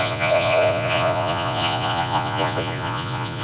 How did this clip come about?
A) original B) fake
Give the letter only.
B